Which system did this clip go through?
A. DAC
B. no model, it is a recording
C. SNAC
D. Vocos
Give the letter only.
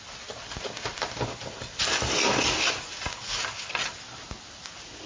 B